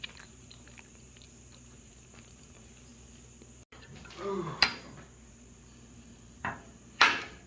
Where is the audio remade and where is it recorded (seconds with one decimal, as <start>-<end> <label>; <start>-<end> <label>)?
0.0-2.9 remade; 2.9-5.3 recorded; 5.3-7.5 remade